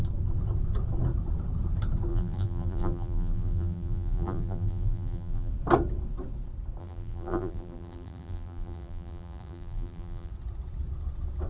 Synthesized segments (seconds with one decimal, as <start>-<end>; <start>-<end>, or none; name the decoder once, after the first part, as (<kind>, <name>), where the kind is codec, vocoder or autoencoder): 2.1-5.5 (vocoder, BigVGAN v2); 6.8-10.3